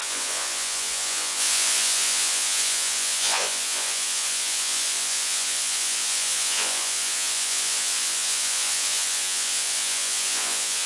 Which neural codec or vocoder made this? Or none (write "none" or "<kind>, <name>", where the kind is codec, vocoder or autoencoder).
vocoder, Vocos